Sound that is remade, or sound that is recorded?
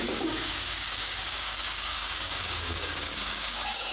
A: remade